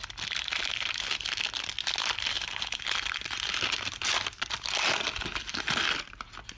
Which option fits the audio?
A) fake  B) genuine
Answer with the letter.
B